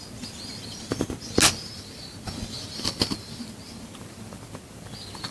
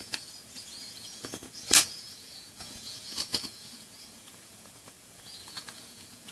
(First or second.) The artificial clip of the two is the second